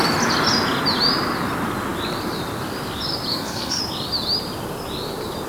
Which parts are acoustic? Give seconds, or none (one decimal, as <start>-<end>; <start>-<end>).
0.0-3.3; 3.8-5.5